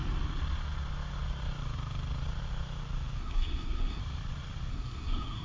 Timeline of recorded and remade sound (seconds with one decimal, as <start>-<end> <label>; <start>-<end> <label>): 0.0-3.2 recorded; 3.2-4.0 remade; 4.0-4.7 recorded; 4.7-5.4 remade